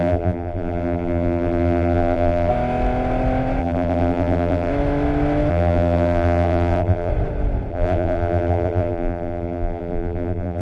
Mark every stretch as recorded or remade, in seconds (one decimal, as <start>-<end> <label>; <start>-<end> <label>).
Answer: 0.0-2.5 remade; 2.5-3.6 recorded; 3.6-4.7 remade; 4.7-5.5 recorded; 5.5-7.1 remade; 7.1-7.7 recorded; 7.7-10.6 remade